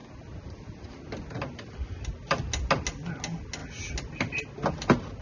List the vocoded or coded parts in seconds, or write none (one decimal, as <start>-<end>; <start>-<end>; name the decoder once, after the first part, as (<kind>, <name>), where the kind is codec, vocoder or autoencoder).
none